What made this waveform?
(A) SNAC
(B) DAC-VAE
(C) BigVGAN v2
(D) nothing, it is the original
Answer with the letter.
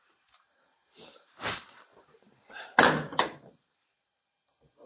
C